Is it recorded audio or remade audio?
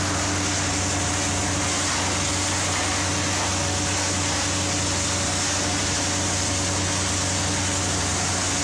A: recorded